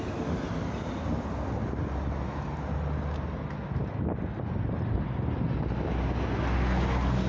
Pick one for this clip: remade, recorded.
recorded